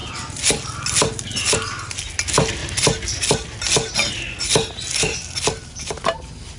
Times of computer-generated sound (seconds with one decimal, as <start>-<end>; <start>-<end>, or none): none